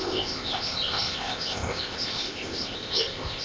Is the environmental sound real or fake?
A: fake